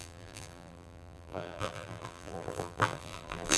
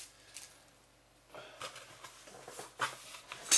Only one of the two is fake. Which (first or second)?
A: first